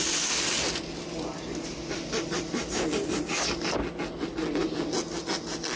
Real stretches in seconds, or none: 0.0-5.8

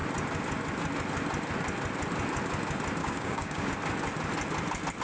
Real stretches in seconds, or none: 0.0-3.0; 3.7-5.0

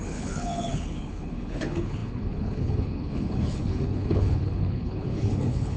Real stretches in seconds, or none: none

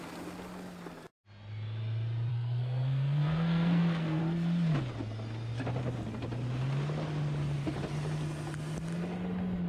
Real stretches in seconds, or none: 0.0-2.3; 4.2-9.7

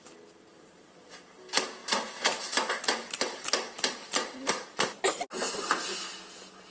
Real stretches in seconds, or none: 0.0-6.7

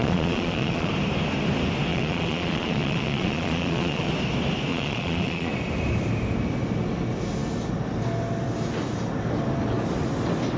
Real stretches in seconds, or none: 0.9-1.9; 4.1-4.7; 5.5-10.6

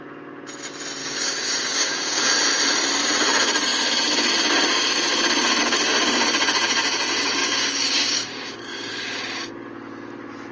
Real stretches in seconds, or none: 0.0-1.0; 2.3-7.4; 9.5-10.5

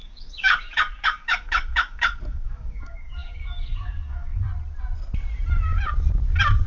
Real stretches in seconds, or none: 4.5-6.7